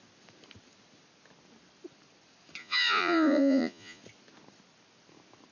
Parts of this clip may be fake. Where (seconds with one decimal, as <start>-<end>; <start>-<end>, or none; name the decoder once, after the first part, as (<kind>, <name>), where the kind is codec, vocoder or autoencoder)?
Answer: 2.6-4.0 (vocoder, Vocos)